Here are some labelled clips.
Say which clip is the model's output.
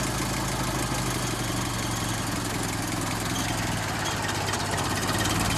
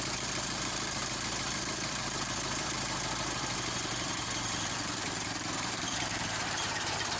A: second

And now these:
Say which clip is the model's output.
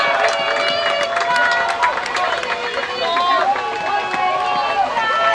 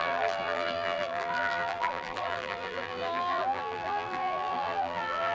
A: second